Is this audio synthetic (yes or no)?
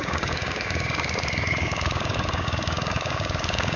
yes